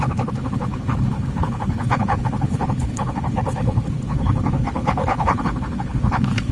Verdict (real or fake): fake